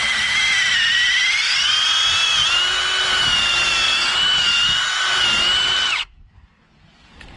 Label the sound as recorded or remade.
recorded